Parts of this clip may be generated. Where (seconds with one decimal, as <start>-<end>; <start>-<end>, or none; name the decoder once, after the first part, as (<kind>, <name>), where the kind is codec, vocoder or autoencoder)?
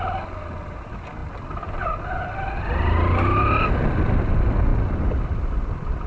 none